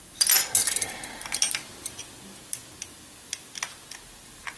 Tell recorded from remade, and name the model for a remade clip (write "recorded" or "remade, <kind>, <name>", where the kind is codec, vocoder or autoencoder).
recorded